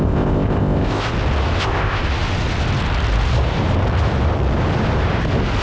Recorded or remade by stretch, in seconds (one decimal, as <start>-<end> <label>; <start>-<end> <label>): 0.0-1.1 remade; 1.1-1.6 recorded; 1.6-2.0 remade; 2.0-5.6 recorded